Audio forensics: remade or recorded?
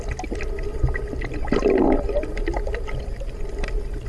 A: recorded